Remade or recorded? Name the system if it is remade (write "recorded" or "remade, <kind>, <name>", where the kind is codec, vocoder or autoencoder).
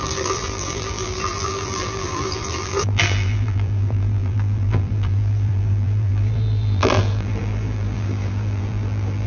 remade, vocoder, BigVGAN v2